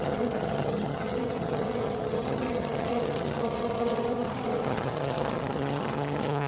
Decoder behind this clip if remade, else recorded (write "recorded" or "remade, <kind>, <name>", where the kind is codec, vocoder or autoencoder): remade, vocoder, HiFi-GAN